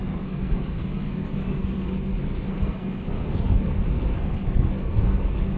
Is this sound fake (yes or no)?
yes